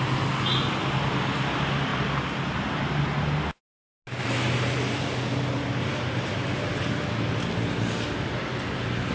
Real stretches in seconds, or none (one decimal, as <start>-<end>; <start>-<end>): 0.0-9.1